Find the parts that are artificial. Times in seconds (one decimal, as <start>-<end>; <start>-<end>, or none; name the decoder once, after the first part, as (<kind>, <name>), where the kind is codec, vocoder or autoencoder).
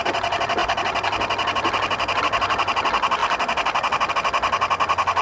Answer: none